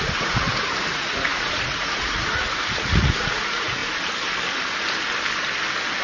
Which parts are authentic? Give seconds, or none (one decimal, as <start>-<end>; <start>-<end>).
3.8-6.0